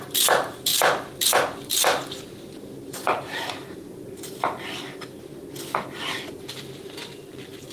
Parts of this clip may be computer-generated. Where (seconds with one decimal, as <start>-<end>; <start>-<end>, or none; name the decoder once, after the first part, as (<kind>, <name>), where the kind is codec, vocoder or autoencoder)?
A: 0.0-0.7 (vocoder, BigVGAN v2); 2.2-5.3; 6.3-7.7